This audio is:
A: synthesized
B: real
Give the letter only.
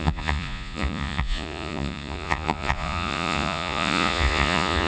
A